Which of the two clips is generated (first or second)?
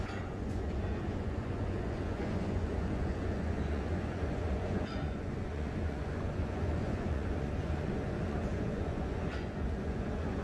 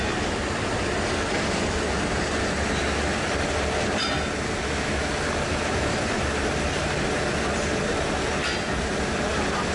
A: first